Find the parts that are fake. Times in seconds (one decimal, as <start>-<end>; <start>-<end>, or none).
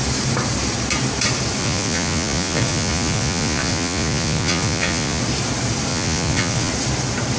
1.6-5.2; 5.9-6.7